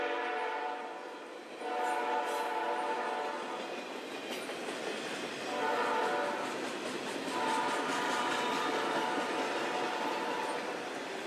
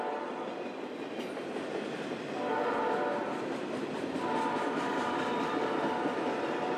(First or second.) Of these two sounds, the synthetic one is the second